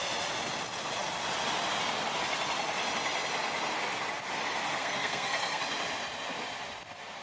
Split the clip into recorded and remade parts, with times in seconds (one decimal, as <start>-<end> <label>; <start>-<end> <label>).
0.0-4.8 recorded; 4.8-5.6 remade; 5.6-7.2 recorded